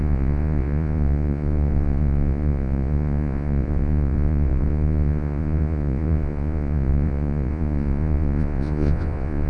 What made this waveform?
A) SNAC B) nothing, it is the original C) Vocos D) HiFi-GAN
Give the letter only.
C